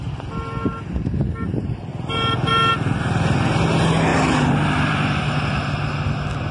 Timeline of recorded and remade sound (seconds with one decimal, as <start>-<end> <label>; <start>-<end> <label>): 0.0-4.1 recorded; 4.1-5.2 remade; 5.2-6.5 recorded